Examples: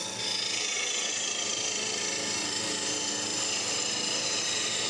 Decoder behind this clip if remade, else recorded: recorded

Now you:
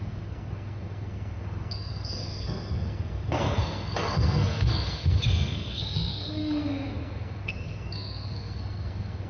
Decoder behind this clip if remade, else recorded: remade, codec, SNAC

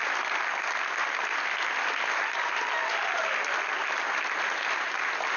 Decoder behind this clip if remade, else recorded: recorded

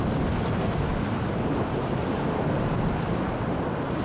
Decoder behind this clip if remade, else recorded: recorded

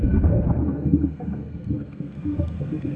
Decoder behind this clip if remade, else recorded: remade, codec, SNAC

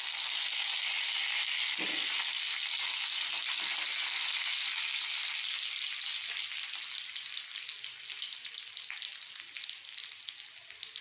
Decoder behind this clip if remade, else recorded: recorded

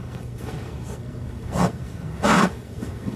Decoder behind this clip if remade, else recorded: remade, codec, SNAC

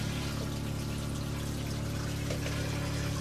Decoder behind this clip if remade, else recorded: recorded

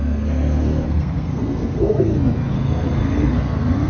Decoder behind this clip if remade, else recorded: remade, codec, SNAC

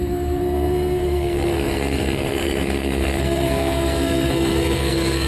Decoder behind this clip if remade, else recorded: remade, codec, SNAC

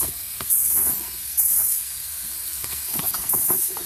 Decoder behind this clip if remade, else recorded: remade, codec, SNAC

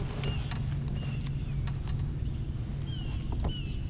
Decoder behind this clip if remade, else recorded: recorded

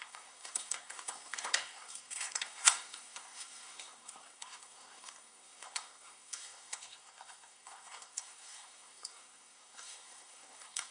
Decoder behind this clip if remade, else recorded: remade, codec, SNAC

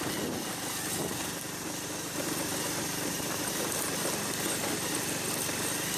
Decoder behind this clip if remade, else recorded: recorded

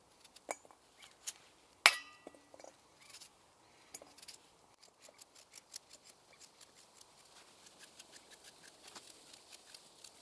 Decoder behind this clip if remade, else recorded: recorded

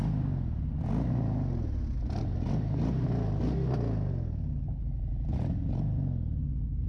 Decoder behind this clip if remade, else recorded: recorded